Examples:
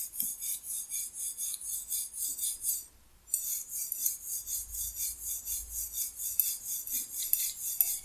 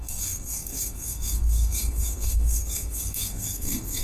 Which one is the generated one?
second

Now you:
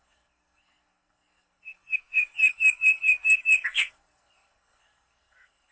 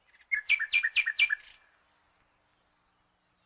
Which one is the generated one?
first